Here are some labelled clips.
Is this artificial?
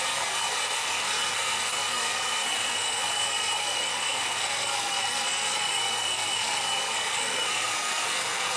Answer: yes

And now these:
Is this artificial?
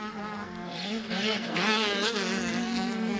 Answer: yes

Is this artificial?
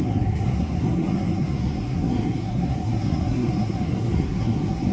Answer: yes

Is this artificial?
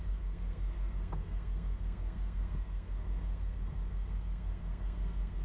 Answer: yes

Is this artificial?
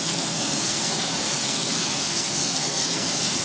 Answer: yes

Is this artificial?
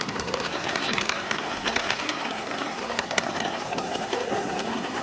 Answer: yes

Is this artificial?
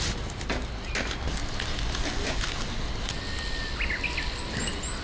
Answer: no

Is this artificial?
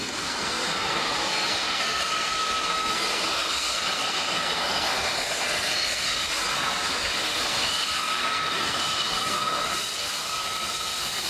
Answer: yes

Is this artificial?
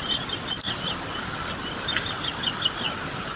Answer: no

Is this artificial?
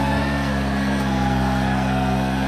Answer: yes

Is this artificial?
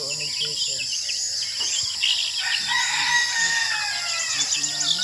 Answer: no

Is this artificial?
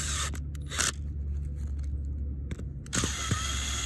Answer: no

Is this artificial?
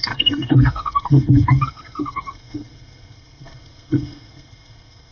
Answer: yes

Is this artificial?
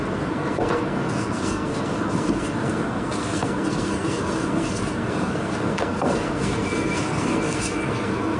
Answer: yes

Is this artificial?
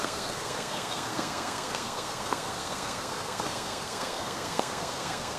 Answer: yes